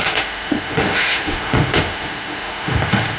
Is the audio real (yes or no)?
no